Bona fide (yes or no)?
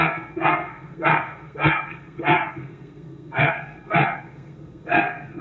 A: no